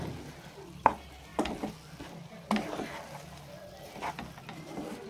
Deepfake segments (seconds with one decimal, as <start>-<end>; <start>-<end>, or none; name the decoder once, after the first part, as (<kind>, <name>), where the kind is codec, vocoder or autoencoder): none